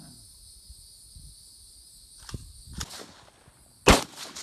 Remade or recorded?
recorded